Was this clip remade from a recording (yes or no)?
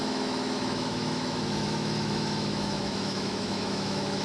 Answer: yes